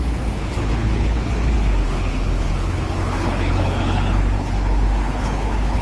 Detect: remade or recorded remade